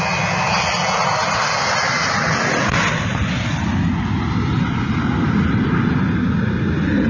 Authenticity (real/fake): real